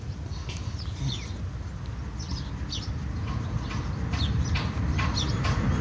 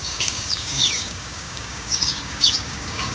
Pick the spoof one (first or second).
second